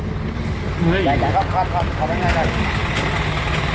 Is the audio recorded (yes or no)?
yes